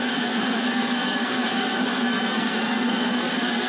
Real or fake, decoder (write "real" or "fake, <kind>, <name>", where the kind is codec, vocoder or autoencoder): fake, codec, SNAC